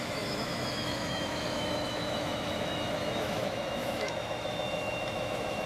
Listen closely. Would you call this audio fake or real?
fake